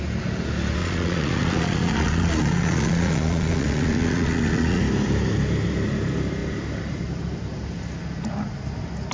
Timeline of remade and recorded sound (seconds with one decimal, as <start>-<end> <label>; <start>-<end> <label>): 0.0-0.8 recorded; 0.8-4.8 remade; 4.8-9.1 recorded